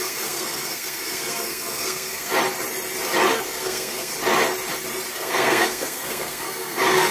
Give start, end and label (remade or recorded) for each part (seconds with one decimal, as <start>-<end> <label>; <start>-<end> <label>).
0.0-2.3 remade; 2.3-3.3 recorded; 3.3-4.1 remade; 4.1-5.1 recorded; 5.1-7.1 remade